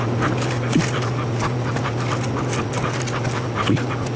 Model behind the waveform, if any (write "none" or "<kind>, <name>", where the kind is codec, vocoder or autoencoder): none